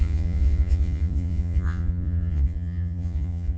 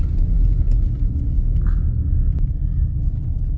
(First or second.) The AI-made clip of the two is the first